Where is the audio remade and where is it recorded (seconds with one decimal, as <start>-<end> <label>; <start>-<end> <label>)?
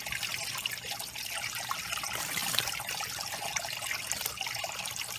0.0-5.2 recorded